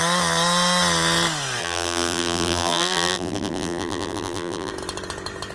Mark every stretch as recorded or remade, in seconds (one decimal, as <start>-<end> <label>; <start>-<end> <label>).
0.0-1.6 recorded; 1.6-4.7 remade; 4.7-5.5 recorded